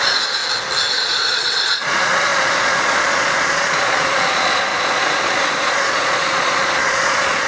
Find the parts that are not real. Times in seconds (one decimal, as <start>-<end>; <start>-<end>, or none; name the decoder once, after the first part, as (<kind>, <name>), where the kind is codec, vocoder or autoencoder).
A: 0.0-0.4 (vocoder, Vocos); 0.9-7.5